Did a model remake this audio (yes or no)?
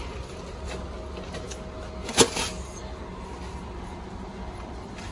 no